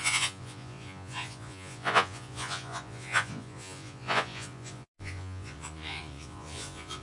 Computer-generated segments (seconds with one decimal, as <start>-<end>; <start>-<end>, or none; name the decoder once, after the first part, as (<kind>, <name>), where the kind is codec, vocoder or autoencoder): 0.0-7.0 (vocoder, Vocos)